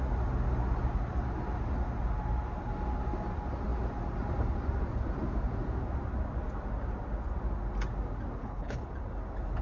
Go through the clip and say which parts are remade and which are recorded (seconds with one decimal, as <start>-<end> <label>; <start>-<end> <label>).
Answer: 0.0-8.4 recorded; 8.4-8.9 remade; 8.9-9.6 recorded